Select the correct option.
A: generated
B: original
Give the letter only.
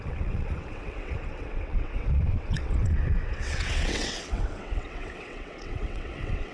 A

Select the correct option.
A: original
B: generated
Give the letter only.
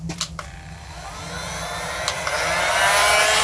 A